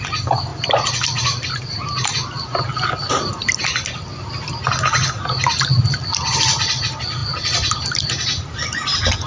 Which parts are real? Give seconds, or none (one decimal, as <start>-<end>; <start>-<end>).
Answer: 0.0-9.3